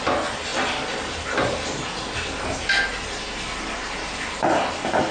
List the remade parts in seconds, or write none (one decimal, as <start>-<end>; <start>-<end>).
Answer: none